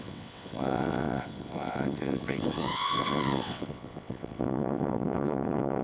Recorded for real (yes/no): no